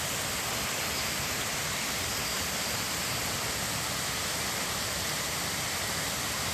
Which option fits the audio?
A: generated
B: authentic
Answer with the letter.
B